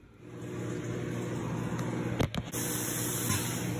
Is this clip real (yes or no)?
yes